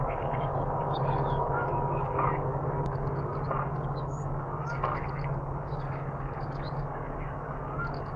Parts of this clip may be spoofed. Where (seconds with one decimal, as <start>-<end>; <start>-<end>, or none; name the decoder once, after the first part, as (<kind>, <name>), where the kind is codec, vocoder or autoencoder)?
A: 0.0-8.2 (codec, DAC)